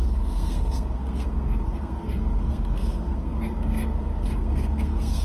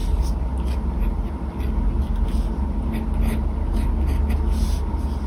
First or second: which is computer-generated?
first